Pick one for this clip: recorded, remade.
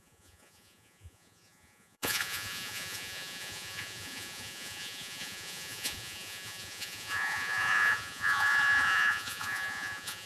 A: remade